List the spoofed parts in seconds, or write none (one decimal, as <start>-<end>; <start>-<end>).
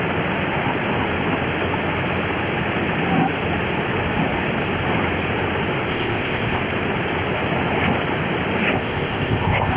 5.9-6.6; 8.7-9.8